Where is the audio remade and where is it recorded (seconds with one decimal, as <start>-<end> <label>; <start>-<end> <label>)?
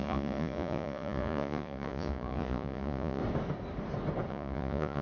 0.0-3.2 remade; 3.2-4.3 recorded; 4.3-5.0 remade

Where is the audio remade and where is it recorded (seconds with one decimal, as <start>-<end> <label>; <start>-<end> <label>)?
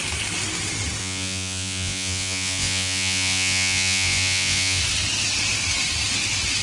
0.0-1.0 recorded; 1.0-4.8 remade; 4.8-6.6 recorded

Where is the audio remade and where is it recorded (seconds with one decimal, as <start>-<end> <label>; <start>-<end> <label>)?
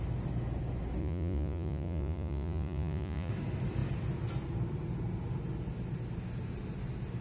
0.0-1.0 recorded; 1.0-3.3 remade; 3.3-7.2 recorded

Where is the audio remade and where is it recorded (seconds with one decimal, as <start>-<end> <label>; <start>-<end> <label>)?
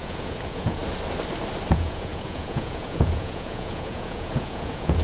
0.0-0.8 remade; 0.8-1.7 recorded; 1.7-5.0 remade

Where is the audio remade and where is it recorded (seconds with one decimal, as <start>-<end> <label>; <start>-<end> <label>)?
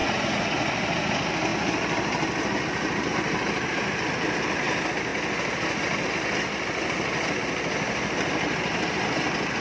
0.0-0.6 remade; 0.6-9.6 recorded